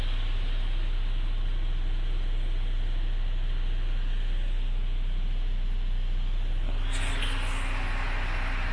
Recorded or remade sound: recorded